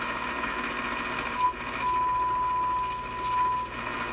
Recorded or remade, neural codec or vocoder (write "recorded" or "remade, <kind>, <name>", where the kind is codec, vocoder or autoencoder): recorded